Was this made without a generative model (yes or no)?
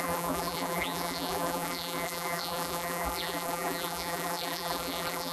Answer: no